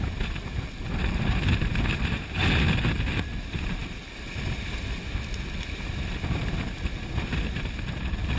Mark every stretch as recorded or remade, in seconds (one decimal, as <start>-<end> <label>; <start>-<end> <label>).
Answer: 0.0-8.4 recorded